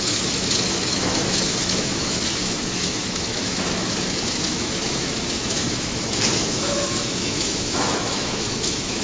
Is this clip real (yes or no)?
no